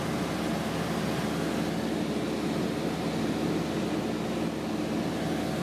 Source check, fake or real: real